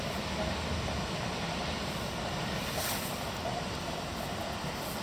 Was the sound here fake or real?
real